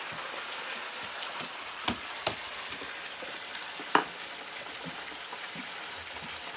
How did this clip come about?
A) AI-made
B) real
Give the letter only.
B